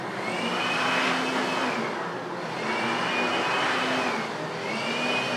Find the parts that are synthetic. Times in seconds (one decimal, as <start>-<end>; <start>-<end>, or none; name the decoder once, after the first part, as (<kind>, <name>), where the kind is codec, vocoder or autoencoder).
none